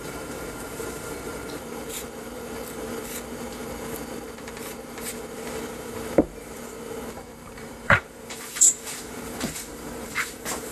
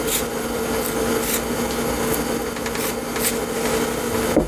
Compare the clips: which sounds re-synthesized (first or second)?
first